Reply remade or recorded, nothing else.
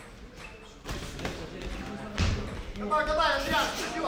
recorded